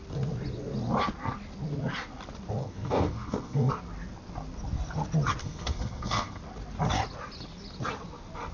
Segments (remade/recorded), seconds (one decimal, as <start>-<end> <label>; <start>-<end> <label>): 0.0-2.6 recorded; 2.6-3.7 remade; 3.7-5.4 recorded; 5.4-6.4 remade; 6.4-8.5 recorded